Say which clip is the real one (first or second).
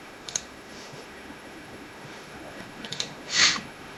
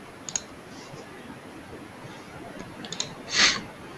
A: second